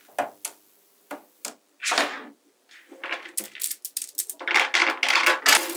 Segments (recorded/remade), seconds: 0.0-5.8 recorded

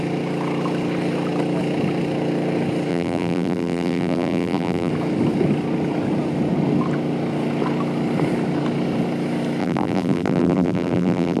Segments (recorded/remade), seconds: 0.0-2.9 recorded; 2.9-4.9 remade; 4.9-9.6 recorded; 9.6-11.4 remade